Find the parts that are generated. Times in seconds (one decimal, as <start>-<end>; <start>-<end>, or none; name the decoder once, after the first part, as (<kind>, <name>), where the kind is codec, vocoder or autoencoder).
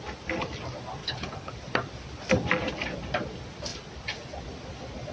1.0-1.5 (codec, HILCodec)